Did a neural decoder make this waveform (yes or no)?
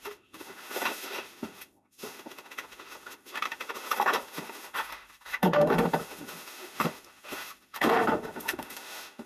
yes